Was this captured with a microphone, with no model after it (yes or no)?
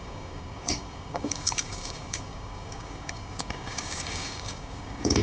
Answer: no